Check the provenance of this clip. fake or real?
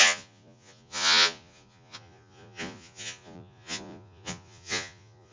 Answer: fake